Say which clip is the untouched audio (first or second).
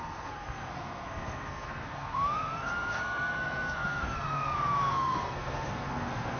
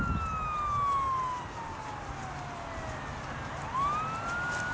second